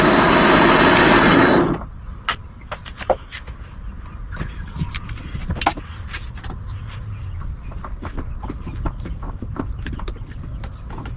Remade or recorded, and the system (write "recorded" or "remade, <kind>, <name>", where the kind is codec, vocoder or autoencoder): recorded